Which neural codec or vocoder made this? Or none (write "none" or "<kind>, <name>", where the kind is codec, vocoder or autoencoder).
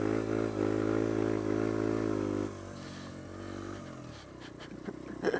none